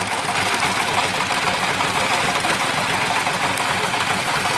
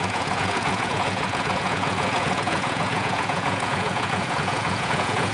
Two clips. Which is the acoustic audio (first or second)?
first